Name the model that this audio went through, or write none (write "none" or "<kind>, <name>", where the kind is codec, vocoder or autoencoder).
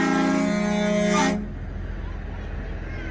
none